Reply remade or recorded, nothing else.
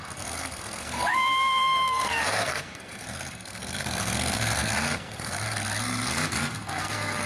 remade